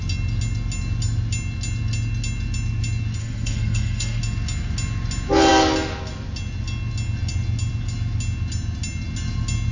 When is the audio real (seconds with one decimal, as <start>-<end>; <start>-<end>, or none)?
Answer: 0.0-3.2; 4.2-9.7